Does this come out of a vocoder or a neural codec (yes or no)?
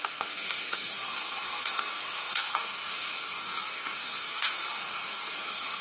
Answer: yes